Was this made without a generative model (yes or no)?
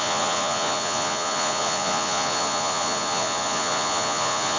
no